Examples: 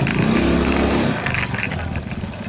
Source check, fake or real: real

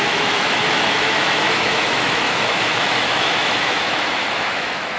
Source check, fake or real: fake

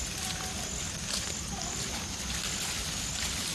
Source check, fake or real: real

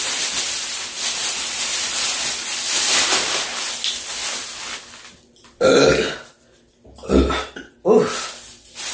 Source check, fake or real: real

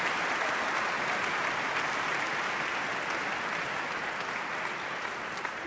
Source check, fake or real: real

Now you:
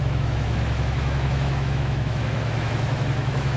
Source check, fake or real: fake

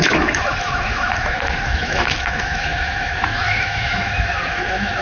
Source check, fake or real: fake